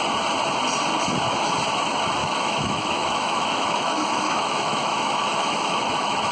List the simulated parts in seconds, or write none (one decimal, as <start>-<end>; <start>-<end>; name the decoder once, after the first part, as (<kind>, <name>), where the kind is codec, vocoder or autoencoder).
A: 2.2-6.3 (autoencoder, DAC-VAE)